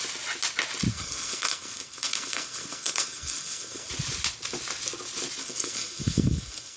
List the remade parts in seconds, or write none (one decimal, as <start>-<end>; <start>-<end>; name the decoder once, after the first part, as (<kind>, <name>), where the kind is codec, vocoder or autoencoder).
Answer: 0.9-3.9 (codec, SNAC); 5.4-6.8